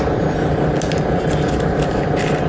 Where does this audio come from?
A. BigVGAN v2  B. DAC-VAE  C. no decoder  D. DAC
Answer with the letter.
C